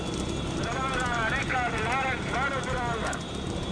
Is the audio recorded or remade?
recorded